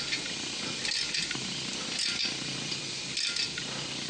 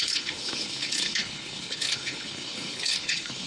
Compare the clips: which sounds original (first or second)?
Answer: first